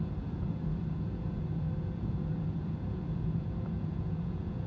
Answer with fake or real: fake